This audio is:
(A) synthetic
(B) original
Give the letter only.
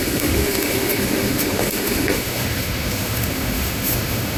A